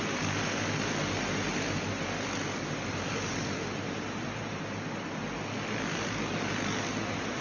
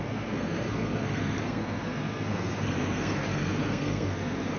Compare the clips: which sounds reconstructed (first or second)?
second